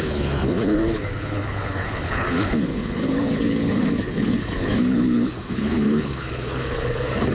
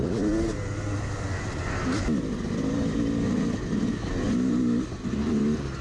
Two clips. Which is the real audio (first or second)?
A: second